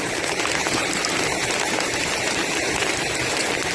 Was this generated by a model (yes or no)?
yes